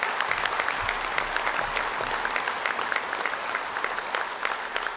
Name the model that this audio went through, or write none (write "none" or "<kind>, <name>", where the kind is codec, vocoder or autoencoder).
none